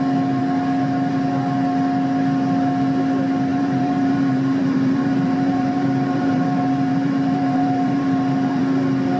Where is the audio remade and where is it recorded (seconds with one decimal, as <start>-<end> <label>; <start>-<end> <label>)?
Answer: 0.0-3.5 recorded; 3.5-8.6 remade; 8.6-9.2 recorded